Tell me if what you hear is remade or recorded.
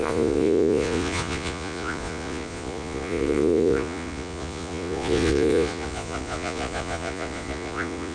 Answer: remade